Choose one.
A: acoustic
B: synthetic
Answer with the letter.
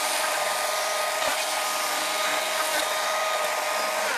A